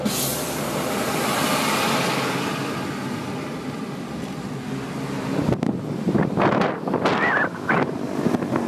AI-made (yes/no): no